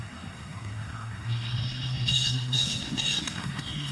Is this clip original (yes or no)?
no